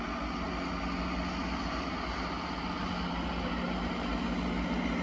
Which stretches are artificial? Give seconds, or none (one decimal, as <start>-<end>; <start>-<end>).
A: none